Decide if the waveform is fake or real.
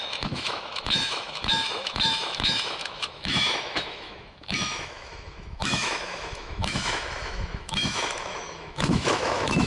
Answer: fake